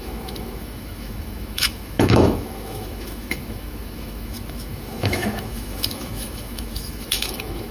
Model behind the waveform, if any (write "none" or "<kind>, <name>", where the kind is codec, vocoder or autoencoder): autoencoder, DAC-VAE